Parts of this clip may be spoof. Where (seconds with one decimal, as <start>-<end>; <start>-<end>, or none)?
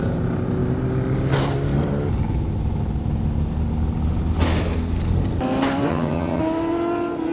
5.9-6.4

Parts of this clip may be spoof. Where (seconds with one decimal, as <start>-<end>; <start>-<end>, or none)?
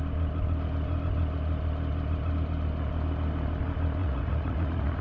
4.0-5.0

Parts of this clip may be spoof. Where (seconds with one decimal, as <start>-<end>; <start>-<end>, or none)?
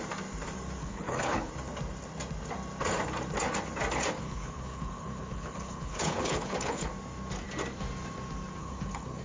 0.8-1.5; 4.2-6.9; 8.6-9.2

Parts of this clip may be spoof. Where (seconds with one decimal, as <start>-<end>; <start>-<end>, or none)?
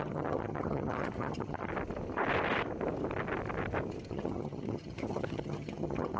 0.0-1.7; 4.1-6.2